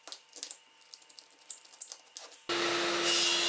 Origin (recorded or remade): recorded